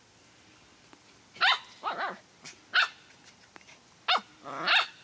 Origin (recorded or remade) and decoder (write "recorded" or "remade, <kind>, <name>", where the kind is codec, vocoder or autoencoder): recorded